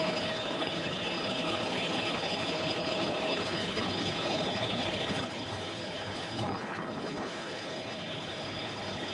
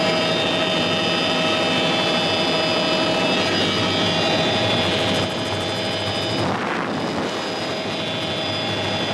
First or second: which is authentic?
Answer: second